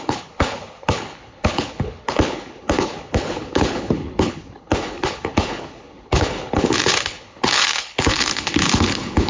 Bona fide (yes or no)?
no